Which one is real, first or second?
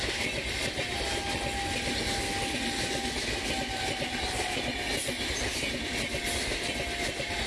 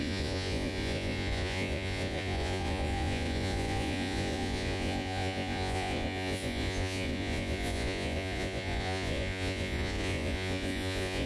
first